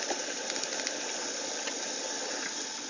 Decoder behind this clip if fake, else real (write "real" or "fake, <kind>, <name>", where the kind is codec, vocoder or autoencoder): real